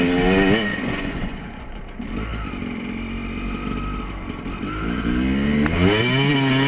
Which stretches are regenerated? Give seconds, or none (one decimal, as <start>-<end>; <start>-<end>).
0.7-1.8